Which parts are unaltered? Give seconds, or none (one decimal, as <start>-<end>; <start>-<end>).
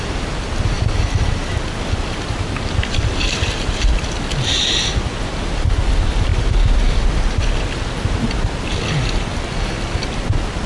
0.0-10.7